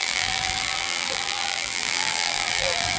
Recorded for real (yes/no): no